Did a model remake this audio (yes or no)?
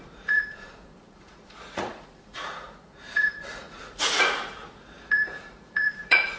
yes